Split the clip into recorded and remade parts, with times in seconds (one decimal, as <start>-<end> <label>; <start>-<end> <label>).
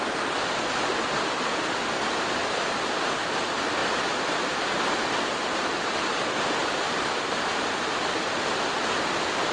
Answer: 0.0-6.6 recorded; 6.6-7.4 remade; 7.4-9.5 recorded